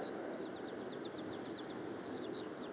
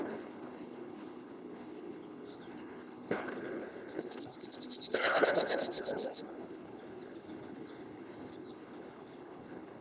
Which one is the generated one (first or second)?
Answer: second